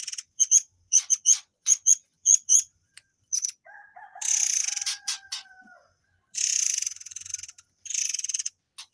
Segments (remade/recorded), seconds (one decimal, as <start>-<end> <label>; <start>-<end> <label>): 0.0-7.3 remade; 7.3-8.0 recorded; 8.0-8.9 remade